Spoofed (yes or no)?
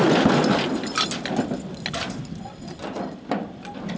no